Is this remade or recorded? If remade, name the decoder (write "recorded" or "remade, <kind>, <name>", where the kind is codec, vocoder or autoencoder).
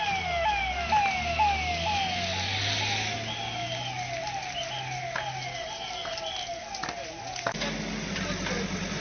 recorded